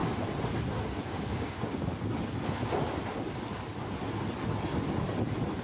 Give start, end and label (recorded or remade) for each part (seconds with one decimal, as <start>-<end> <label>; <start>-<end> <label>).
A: 0.0-0.7 recorded; 0.7-1.9 remade; 1.9-5.6 recorded